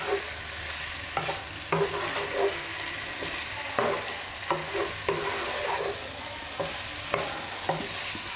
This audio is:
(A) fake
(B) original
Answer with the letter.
B